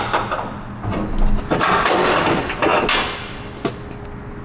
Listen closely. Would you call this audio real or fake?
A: real